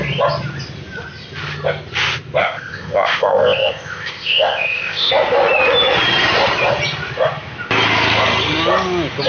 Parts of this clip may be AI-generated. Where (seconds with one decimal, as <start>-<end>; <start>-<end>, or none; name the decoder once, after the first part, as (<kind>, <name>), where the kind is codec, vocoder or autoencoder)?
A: 2.4-5.1 (codec, ZipCodec)